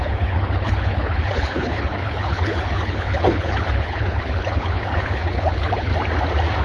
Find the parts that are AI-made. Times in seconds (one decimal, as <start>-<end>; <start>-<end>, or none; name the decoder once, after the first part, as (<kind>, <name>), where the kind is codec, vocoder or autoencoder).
0.0-5.9 (codec, HILCodec)